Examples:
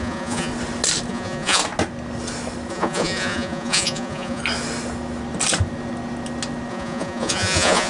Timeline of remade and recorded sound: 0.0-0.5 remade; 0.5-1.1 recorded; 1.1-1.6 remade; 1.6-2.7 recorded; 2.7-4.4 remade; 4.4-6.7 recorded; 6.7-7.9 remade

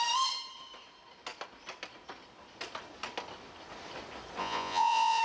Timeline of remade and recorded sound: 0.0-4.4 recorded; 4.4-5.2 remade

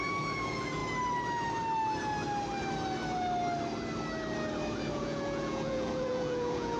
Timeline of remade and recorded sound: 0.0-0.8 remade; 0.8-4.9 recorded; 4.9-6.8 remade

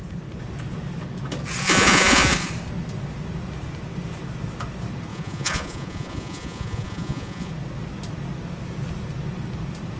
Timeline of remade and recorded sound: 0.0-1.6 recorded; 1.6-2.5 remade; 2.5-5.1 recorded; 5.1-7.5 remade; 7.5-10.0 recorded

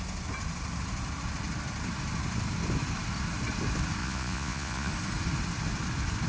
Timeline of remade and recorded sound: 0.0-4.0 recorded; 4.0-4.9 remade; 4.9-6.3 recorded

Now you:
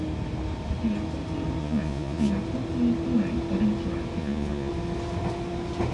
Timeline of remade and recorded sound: 0.0-1.6 recorded; 1.6-2.3 remade; 2.3-4.2 recorded; 4.2-4.7 remade; 4.7-5.9 recorded